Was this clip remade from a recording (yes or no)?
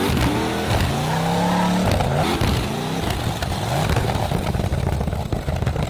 no